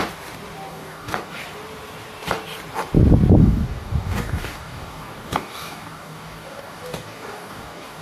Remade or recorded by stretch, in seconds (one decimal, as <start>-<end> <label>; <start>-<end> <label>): 0.0-0.7 recorded; 0.7-1.4 remade; 1.4-3.4 recorded; 3.4-8.0 remade